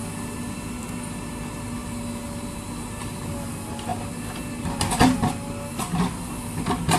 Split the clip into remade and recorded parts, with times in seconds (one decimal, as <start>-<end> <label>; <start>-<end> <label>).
0.0-7.0 recorded